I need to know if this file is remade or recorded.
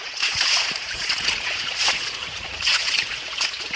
remade